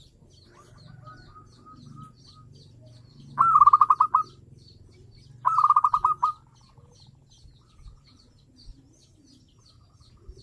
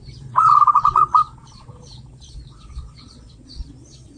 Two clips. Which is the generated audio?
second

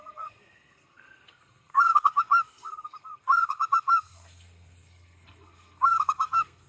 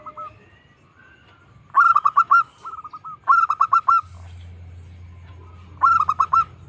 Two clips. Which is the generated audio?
first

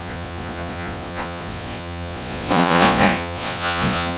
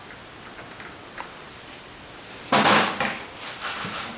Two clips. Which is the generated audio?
first